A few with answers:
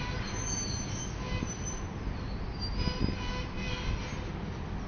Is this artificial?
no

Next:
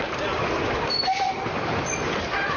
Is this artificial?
yes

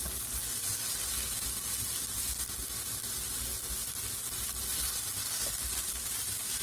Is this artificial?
no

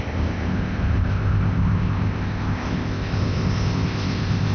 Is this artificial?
yes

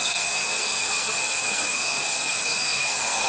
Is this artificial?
yes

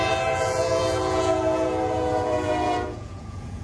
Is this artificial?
yes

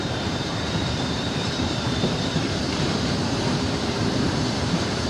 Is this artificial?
yes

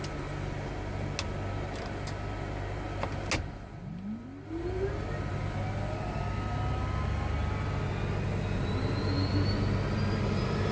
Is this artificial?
no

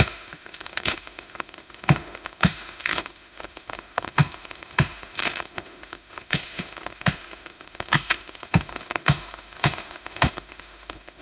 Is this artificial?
yes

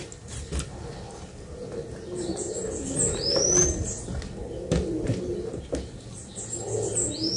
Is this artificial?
no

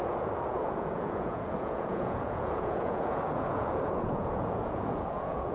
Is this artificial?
yes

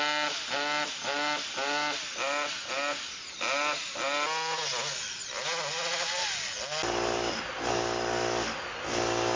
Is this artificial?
no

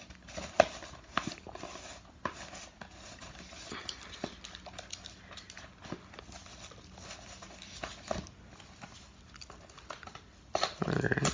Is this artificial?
no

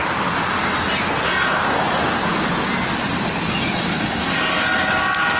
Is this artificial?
no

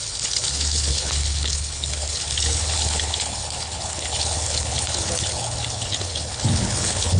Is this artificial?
yes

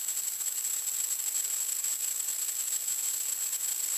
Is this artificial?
no